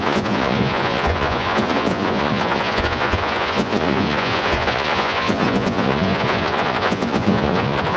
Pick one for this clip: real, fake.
fake